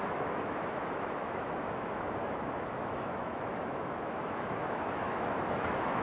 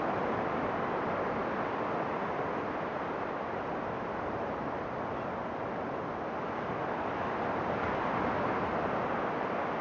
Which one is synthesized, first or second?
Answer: first